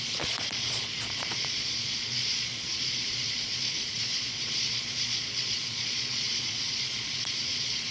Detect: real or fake fake